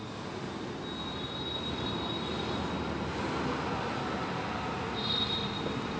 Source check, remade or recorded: recorded